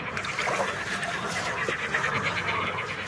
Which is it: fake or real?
real